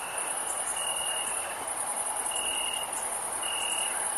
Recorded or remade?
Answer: recorded